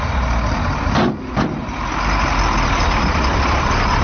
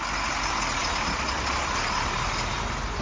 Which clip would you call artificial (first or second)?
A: first